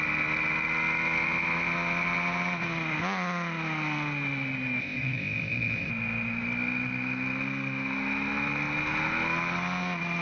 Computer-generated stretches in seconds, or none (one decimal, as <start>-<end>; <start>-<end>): 4.8-5.9